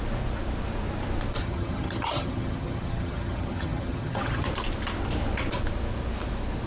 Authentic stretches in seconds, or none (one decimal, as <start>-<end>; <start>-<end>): 0.0-1.4; 4.5-6.7